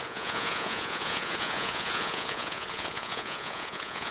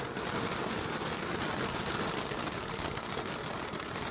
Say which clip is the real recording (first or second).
second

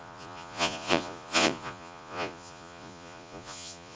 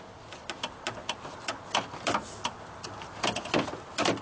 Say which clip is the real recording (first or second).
second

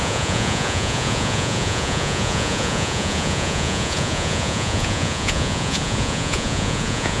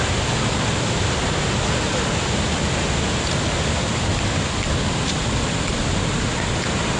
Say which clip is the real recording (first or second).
second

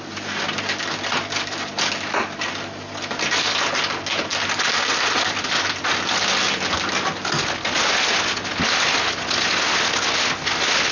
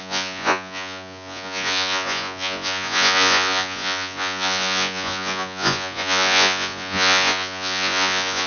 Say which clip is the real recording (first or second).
first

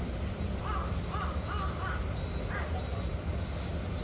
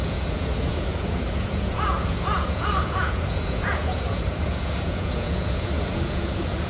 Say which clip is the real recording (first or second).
first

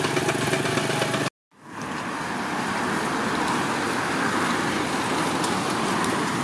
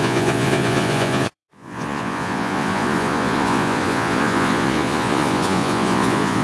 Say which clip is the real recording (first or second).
first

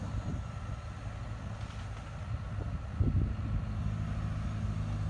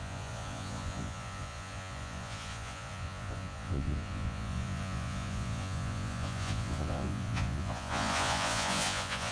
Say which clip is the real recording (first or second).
first